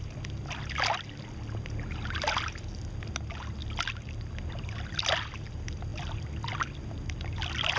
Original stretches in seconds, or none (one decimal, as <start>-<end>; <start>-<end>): 0.0-7.8